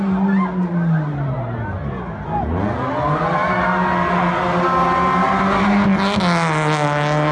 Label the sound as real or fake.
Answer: real